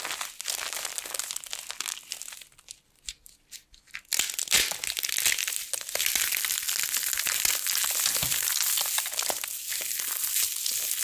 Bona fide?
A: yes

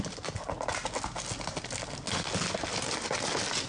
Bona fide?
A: yes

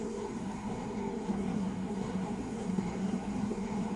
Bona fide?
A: no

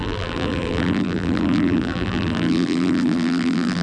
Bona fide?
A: no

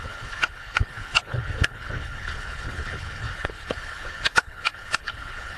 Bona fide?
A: no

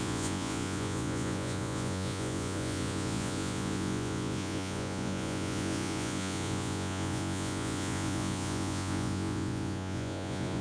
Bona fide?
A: no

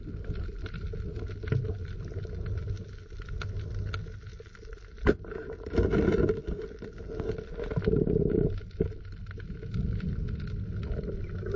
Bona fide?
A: yes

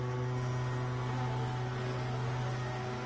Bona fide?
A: yes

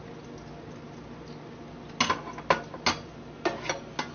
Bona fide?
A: yes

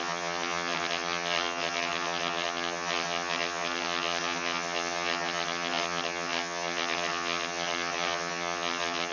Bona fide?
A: no